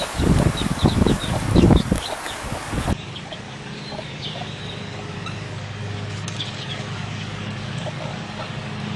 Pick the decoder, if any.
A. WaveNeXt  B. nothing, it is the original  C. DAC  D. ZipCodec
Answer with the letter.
C